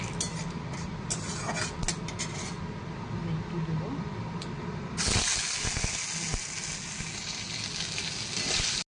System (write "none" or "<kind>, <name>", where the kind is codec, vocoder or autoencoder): none